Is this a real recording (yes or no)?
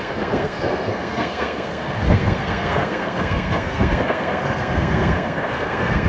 no